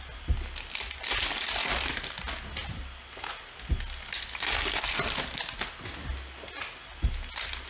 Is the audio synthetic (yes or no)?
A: no